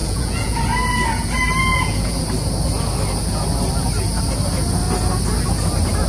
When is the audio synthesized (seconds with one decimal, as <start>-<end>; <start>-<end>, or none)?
0.0-0.6; 1.7-2.2